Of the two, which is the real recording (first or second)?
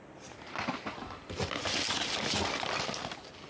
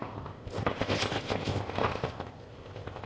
first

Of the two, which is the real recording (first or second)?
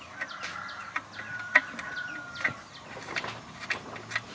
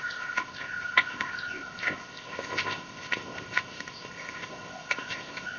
first